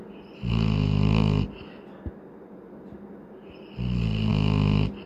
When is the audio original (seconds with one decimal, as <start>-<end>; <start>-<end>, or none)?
0.0-5.1